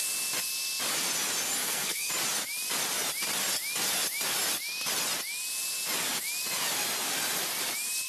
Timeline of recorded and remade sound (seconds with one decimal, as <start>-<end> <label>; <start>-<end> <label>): 0.0-1.6 recorded; 1.6-2.1 remade; 2.1-8.1 recorded